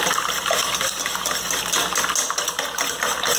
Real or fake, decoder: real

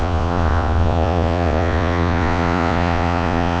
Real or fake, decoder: fake, vocoder, Vocos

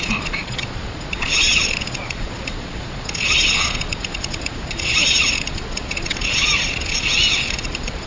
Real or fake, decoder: fake, vocoder, Vocos